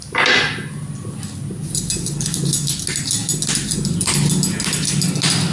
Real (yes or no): yes